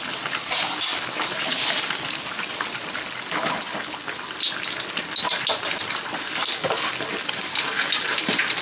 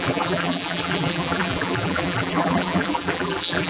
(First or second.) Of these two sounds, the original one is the first